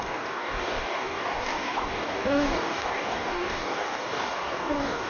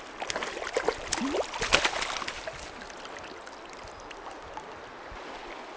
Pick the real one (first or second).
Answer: second